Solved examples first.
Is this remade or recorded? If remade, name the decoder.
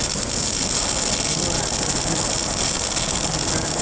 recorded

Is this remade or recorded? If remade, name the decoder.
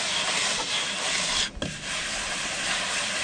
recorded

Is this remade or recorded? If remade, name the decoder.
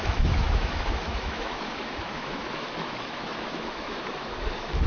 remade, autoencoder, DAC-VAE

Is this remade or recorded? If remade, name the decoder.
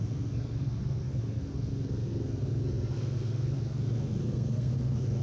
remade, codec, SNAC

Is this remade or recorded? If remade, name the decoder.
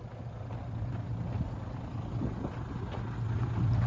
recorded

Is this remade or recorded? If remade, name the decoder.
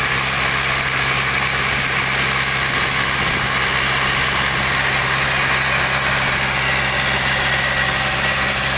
recorded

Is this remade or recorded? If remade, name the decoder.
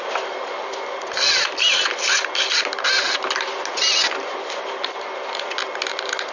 recorded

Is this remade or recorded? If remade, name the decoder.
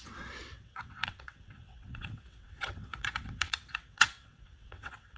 remade, vocoder, WaveNeXt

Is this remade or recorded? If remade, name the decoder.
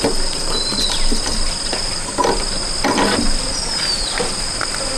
recorded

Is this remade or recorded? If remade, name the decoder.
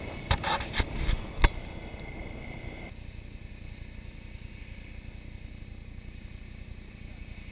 recorded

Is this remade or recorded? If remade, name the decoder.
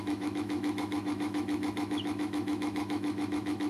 remade, autoencoder, DAC-VAE